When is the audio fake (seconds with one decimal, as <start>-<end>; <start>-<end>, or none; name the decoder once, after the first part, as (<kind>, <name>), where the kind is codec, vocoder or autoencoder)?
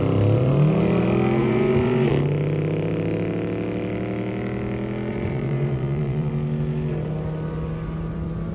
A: 1.4-2.1 (vocoder, Vocos); 5.1-6.3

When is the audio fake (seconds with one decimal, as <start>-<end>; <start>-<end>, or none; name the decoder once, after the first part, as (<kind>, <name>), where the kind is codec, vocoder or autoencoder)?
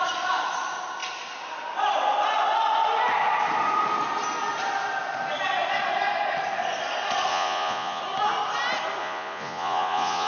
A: 7.3-8.0 (vocoder, Vocos); 9.0-10.3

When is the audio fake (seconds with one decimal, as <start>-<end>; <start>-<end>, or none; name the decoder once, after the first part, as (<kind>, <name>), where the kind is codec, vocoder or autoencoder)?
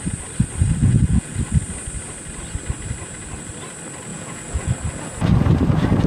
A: 0.8-1.4 (vocoder, Vocos); 4.1-4.7